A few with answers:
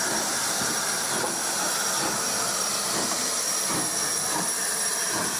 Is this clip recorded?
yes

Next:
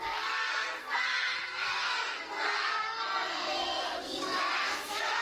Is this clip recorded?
no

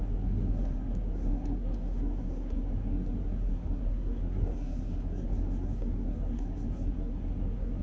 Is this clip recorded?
no